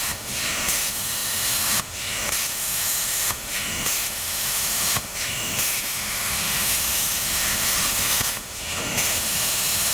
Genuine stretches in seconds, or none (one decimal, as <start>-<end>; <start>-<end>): none